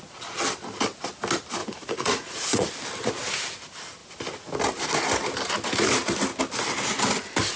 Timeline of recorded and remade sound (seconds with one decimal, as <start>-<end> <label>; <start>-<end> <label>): 0.0-1.6 recorded; 1.6-2.7 remade; 2.7-7.6 recorded

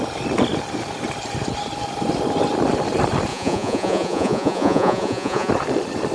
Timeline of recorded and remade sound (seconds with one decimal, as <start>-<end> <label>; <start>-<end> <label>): 0.0-3.3 recorded; 3.3-5.5 remade; 5.5-6.1 recorded

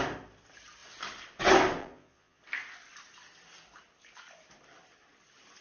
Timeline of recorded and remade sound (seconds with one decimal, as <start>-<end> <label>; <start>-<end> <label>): 0.0-1.8 recorded; 1.8-2.4 remade; 2.4-5.6 recorded

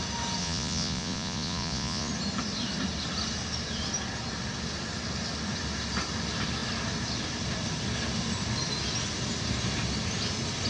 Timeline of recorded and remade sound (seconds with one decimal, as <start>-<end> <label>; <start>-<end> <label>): 0.0-0.4 recorded; 0.4-2.1 remade; 2.1-10.7 recorded

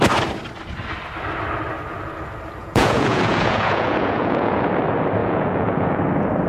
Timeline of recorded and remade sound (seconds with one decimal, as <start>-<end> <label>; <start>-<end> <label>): 0.0-2.6 recorded; 2.6-4.7 remade; 4.7-5.2 recorded; 5.2-6.0 remade; 6.0-6.5 recorded

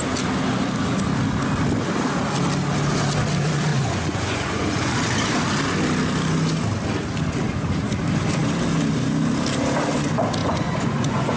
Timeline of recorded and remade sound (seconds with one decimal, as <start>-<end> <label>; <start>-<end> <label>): 0.0-3.7 recorded; 3.7-4.9 remade; 4.9-10.4 recorded; 10.4-11.4 remade

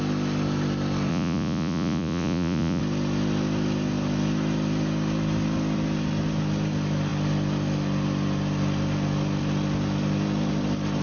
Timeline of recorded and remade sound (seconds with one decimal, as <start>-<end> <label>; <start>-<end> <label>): 0.0-1.1 recorded; 1.1-2.8 remade; 2.8-11.0 recorded

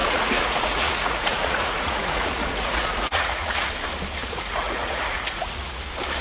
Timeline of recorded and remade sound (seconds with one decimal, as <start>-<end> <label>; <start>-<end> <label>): 0.0-3.7 remade; 3.7-4.2 recorded; 4.2-5.8 remade; 5.8-6.2 recorded